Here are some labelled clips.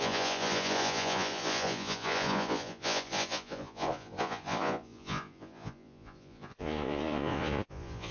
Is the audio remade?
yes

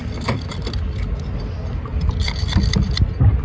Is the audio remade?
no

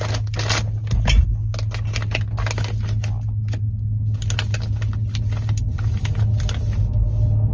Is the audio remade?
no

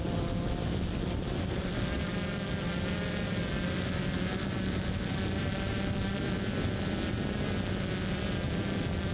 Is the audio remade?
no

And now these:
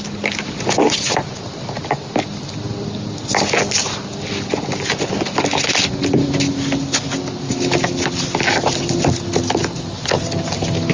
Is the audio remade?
no